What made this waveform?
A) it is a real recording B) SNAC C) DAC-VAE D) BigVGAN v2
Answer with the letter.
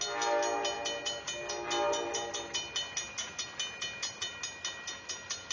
A